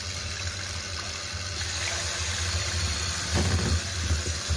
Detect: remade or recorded recorded